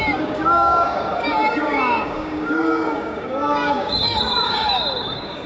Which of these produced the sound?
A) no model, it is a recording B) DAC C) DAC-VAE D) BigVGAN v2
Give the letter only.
B